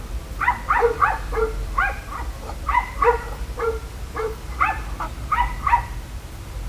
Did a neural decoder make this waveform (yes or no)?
yes